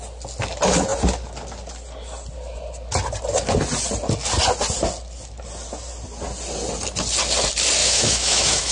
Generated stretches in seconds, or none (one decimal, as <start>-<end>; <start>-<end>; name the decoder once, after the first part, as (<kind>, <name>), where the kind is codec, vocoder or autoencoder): 7.8-8.7 (autoencoder, DAC-VAE)